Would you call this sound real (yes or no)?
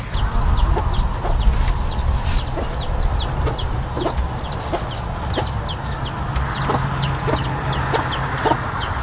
yes